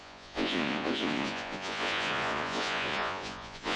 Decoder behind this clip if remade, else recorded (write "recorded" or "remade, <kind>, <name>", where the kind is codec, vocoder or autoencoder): remade, vocoder, Vocos